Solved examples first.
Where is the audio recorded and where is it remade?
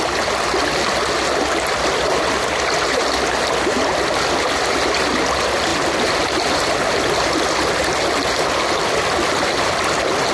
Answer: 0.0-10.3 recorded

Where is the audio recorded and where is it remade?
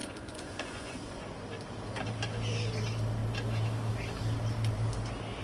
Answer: 0.0-1.2 remade; 1.2-5.4 recorded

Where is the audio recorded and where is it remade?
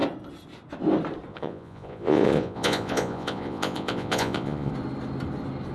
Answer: 0.0-1.3 recorded; 1.3-4.7 remade; 4.7-5.7 recorded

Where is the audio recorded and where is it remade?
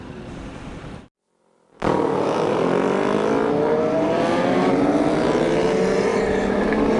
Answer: 0.0-7.0 recorded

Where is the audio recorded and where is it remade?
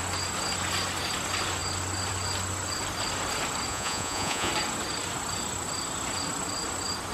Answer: 0.0-3.7 recorded; 3.7-4.5 remade; 4.5-7.1 recorded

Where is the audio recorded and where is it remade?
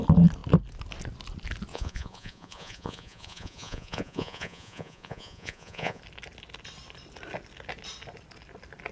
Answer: 0.0-1.7 recorded; 1.7-6.0 remade; 6.0-8.9 recorded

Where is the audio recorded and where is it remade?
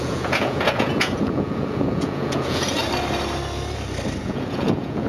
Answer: 0.0-2.8 remade; 2.8-4.2 recorded; 4.2-5.1 remade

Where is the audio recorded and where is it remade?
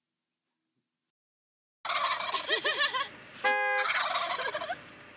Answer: 0.0-5.2 recorded